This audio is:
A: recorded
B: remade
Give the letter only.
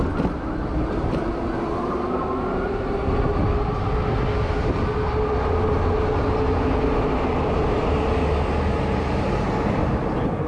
A